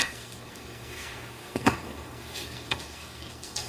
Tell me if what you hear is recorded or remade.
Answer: remade